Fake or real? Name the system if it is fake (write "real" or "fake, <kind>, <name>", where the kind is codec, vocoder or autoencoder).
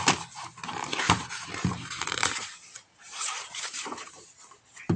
fake, vocoder, BigVGAN v2